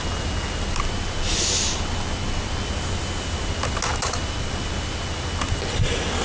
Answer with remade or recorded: recorded